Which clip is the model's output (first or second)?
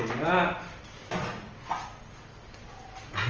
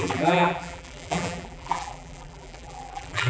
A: second